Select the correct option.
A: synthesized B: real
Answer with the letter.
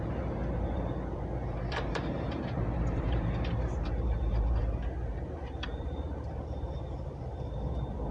A